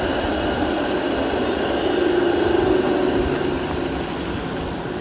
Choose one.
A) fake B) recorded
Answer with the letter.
B